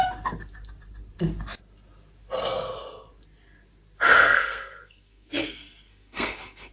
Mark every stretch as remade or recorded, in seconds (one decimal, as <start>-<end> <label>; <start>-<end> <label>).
0.0-4.1 recorded; 4.1-6.7 remade